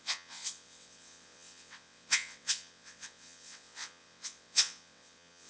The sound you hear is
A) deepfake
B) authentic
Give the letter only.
A